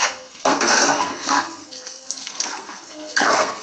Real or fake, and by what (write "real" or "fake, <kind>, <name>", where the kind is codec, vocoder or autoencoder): fake, codec, SNAC